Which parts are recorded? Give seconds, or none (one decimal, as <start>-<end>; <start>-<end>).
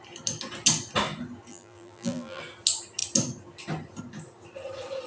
0.0-1.5; 2.4-5.1